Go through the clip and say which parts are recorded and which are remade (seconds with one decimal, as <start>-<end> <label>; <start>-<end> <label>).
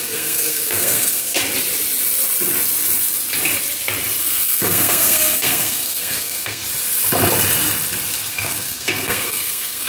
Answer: 0.0-1.4 remade; 1.4-4.2 recorded; 4.2-6.6 remade; 6.6-8.3 recorded; 8.3-9.9 remade